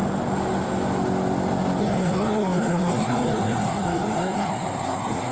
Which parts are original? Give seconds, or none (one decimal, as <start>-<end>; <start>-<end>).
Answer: 0.0-1.8